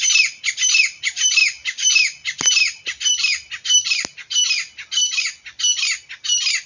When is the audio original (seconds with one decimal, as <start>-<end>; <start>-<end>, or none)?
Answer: 0.0-6.7